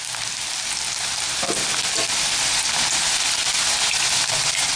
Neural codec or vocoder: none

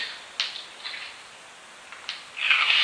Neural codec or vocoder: none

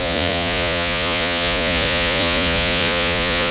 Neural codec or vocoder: vocoder, Vocos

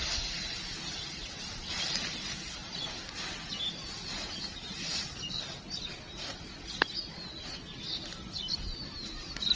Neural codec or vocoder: none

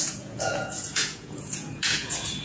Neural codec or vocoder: vocoder, Vocos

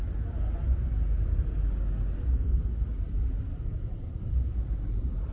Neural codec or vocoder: none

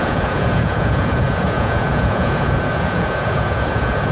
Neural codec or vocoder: vocoder, Vocos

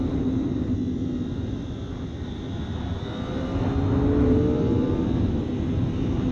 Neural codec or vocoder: none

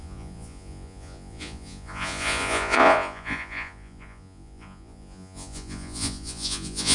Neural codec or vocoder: vocoder, Vocos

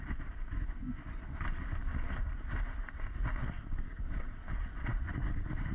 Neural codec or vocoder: none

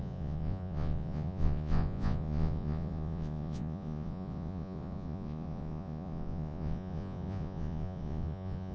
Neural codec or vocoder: vocoder, Vocos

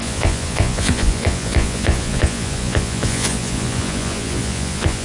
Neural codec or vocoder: vocoder, Vocos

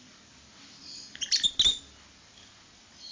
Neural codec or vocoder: none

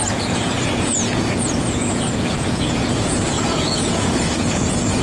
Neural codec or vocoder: vocoder, Vocos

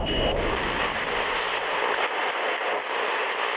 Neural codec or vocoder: none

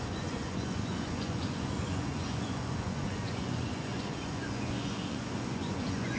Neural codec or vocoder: vocoder, Vocos